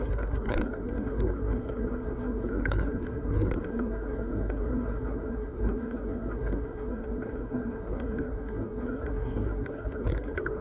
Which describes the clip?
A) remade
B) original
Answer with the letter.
A